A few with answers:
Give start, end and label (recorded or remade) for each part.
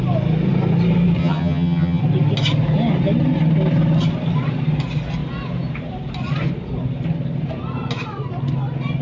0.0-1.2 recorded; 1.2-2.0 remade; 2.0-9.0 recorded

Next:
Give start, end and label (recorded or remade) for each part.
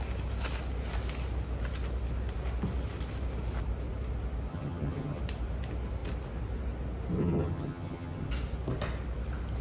0.0-4.5 recorded; 4.5-5.2 remade; 5.2-7.2 recorded; 7.2-8.3 remade; 8.3-9.6 recorded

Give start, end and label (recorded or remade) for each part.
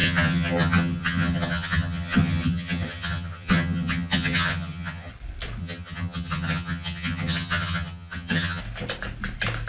0.0-5.1 remade; 5.1-5.6 recorded; 5.6-8.6 remade; 8.6-9.7 recorded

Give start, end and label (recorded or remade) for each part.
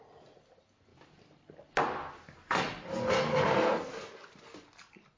0.0-5.2 recorded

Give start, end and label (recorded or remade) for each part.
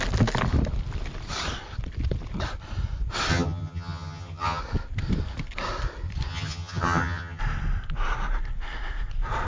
0.0-3.3 recorded; 3.3-4.6 remade; 4.6-6.3 recorded; 6.3-7.4 remade; 7.4-9.5 recorded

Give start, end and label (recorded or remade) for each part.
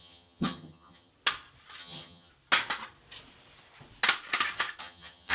0.0-1.1 remade; 1.1-1.8 recorded; 1.8-2.3 remade; 2.3-4.8 recorded; 4.8-5.3 remade